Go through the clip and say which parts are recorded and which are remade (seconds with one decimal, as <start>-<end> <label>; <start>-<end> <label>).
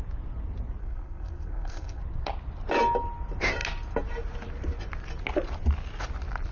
0.0-0.8 recorded; 0.8-2.0 remade; 2.0-6.5 recorded